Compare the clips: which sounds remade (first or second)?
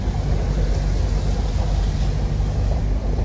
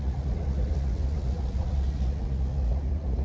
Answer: second